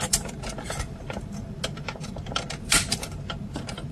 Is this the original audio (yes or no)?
no